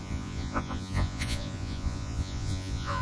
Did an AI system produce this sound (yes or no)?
yes